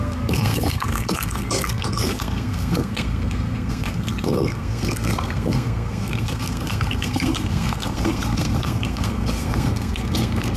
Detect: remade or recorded remade